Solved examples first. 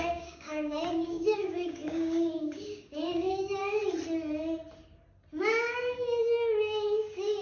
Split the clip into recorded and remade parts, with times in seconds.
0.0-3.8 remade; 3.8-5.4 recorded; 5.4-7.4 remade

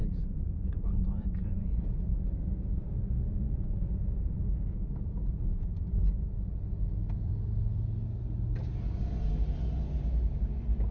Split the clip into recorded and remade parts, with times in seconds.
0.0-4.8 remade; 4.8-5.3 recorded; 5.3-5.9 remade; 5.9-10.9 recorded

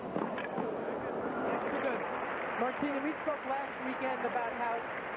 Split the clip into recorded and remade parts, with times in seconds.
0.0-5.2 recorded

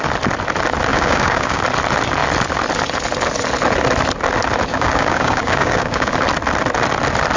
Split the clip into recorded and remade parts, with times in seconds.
0.0-0.9 recorded; 0.9-1.6 remade; 1.6-4.7 recorded; 4.7-6.1 remade; 6.1-7.4 recorded

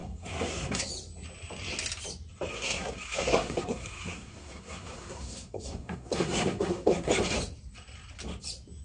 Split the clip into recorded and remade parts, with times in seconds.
0.0-0.9 remade; 0.9-2.5 recorded; 2.5-7.1 remade; 7.1-8.8 recorded

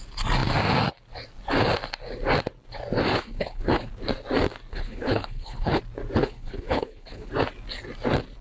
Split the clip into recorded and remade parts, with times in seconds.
0.0-3.1 recorded; 3.1-3.9 remade; 3.9-4.7 recorded; 4.7-5.8 remade; 5.8-6.2 recorded; 6.2-7.3 remade; 7.3-8.4 recorded

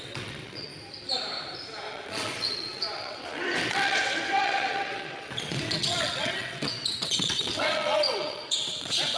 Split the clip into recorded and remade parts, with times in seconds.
0.0-0.7 remade; 0.7-1.9 recorded; 1.9-9.2 remade